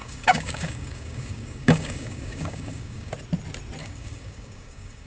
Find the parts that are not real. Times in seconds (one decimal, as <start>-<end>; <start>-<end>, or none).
0.0-3.1; 3.8-5.1